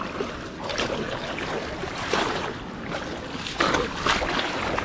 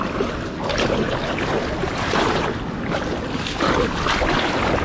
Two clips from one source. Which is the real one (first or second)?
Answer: second